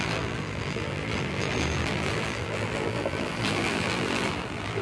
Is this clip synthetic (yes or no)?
yes